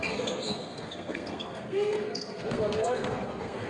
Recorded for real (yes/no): no